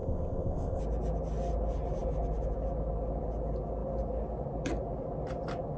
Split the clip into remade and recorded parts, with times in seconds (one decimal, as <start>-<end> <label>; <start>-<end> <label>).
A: 0.0-0.8 remade; 0.8-5.8 recorded

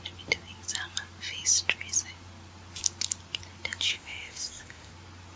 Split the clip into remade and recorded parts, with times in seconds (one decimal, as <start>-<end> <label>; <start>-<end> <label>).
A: 0.0-3.9 recorded; 3.9-4.9 remade; 4.9-5.4 recorded

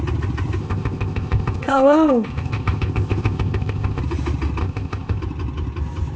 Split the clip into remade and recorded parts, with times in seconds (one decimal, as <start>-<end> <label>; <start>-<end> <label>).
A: 0.0-0.6 recorded; 0.6-4.0 remade; 4.0-4.6 recorded; 4.6-5.2 remade; 5.2-6.2 recorded

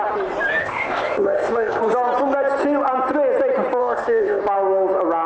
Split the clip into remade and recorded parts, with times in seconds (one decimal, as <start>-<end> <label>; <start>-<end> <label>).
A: 0.0-0.6 recorded; 0.6-1.8 remade; 1.8-3.8 recorded; 3.8-4.4 remade; 4.4-5.3 recorded

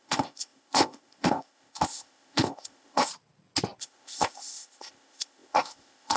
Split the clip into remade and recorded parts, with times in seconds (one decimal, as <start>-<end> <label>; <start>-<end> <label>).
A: 0.0-3.1 remade; 3.1-3.8 recorded; 3.8-6.2 remade

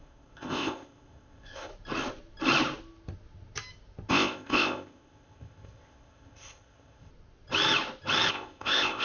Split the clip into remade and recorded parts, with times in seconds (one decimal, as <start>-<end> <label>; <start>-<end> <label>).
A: 0.0-1.7 remade; 1.7-4.1 recorded; 4.1-7.1 remade; 7.1-8.3 recorded; 8.3-9.0 remade